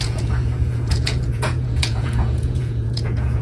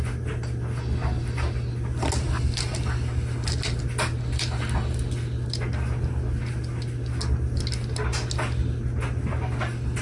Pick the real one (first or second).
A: second